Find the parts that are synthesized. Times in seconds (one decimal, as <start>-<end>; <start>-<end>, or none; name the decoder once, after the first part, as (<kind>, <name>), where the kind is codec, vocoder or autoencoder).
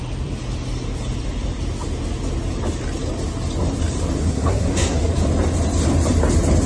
4.2-5.1 (codec, SNAC)